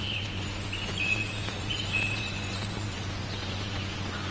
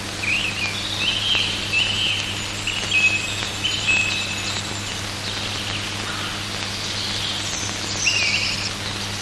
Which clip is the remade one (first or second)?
first